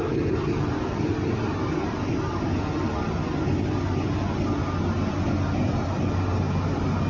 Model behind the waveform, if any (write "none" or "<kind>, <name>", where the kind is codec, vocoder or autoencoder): none